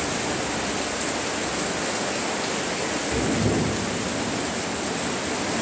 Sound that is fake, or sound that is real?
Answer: real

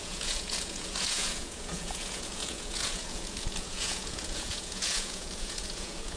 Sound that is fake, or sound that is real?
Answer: fake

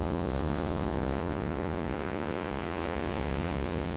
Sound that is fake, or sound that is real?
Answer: fake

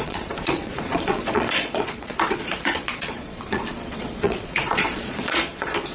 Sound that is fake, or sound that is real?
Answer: fake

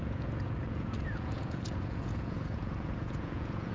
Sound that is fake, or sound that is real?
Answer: fake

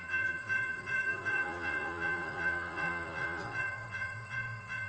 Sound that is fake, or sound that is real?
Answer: fake